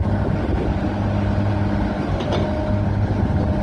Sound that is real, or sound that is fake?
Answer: real